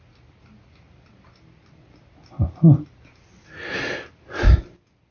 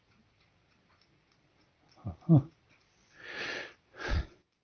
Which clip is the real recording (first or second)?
first